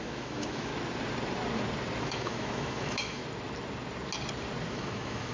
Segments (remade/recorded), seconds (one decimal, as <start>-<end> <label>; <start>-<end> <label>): 0.0-0.7 remade; 0.7-2.0 recorded; 2.0-3.2 remade; 3.2-4.7 recorded; 4.7-5.3 remade